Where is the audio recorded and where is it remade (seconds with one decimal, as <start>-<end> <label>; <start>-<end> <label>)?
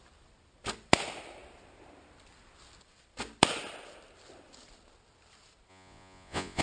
0.0-5.7 recorded; 5.7-6.6 remade